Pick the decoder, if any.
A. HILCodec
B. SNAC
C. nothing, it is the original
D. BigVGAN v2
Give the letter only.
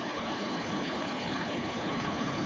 A